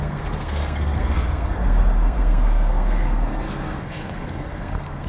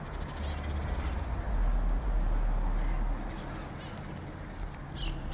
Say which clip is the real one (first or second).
second